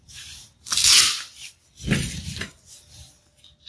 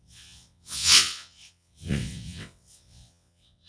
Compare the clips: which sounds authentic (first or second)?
first